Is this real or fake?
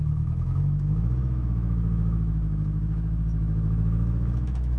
fake